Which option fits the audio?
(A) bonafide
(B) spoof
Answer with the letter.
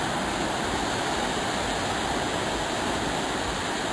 A